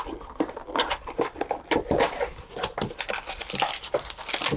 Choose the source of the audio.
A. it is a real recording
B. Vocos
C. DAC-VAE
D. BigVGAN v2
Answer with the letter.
A